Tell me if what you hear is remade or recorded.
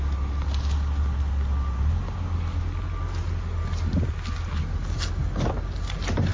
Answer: recorded